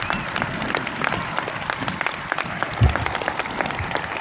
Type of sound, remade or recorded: recorded